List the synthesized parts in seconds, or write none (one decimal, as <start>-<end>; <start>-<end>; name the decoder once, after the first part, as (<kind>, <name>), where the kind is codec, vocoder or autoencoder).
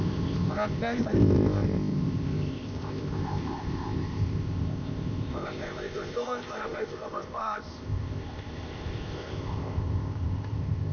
0.0-10.9 (codec, ZipCodec)